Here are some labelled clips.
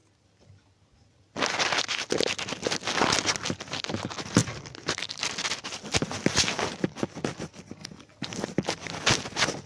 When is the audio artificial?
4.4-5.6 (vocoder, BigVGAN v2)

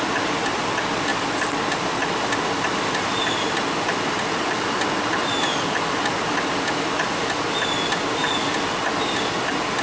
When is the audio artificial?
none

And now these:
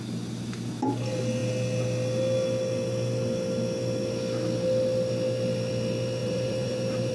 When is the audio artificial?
6.2-7.1 (vocoder, BigVGAN v2)

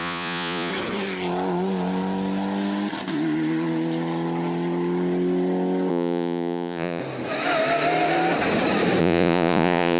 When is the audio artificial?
0.0-0.7 (vocoder, Vocos); 5.9-7.0; 9.0-10.0

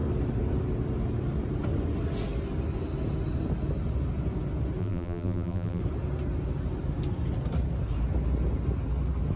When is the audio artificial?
4.8-5.8 (vocoder, BigVGAN v2)